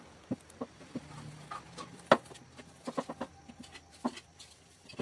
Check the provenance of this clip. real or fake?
real